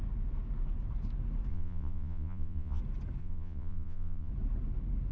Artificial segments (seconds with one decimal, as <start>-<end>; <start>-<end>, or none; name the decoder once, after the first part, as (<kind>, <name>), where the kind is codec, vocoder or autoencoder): 1.5-2.8 (vocoder, Vocos); 3.2-4.3